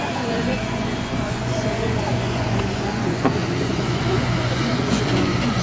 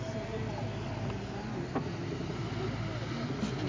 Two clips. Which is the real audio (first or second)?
second